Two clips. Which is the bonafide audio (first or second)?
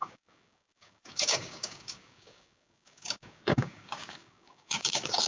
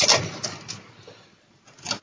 second